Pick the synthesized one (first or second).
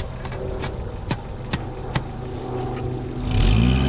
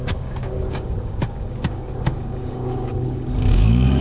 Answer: second